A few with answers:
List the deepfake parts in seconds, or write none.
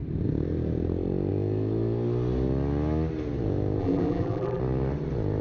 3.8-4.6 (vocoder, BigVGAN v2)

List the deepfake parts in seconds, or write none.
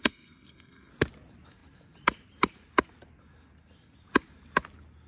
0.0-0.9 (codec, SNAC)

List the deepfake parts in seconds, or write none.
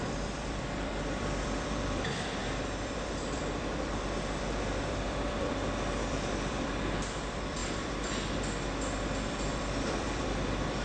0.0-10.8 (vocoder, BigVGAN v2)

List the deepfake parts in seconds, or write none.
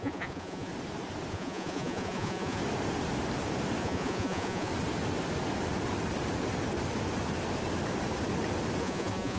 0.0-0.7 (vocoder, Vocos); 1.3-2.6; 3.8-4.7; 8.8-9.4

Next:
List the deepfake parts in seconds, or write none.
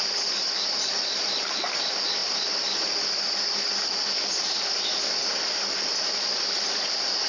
none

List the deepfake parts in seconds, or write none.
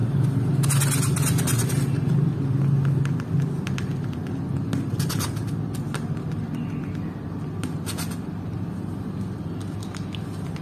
none